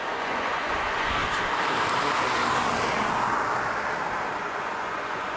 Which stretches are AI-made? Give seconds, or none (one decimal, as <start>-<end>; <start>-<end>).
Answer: 0.0-1.2; 4.4-5.4